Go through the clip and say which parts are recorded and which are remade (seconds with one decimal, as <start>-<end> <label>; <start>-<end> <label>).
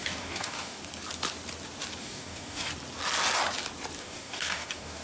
0.0-0.8 remade; 0.8-2.0 recorded; 2.0-2.7 remade; 2.7-4.0 recorded; 4.0-5.0 remade